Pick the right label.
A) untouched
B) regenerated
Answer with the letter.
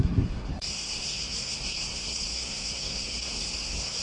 B